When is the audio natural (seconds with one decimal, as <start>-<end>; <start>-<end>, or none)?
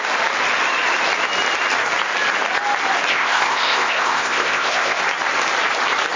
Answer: 0.0-3.1; 5.0-6.2